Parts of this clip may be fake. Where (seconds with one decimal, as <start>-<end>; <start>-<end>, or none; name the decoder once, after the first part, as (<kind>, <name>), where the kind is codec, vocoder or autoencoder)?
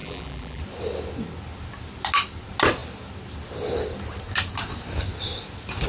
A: 0.0-0.6 (vocoder, BigVGAN v2)